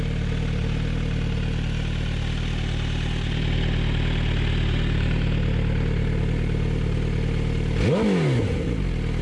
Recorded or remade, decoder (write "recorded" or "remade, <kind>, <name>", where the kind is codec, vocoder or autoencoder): recorded